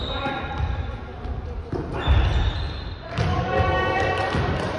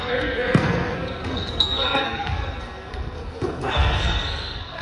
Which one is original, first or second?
first